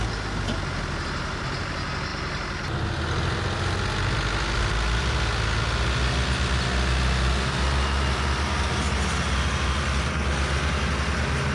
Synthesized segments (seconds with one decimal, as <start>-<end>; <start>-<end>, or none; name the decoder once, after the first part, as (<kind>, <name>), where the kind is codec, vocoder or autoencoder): none